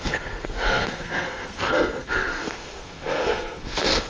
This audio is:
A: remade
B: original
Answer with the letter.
A